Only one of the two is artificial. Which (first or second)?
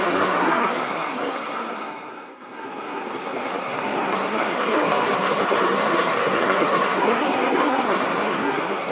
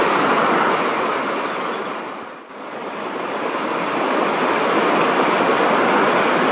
first